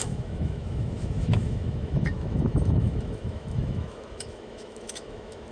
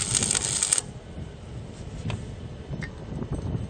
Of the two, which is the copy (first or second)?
first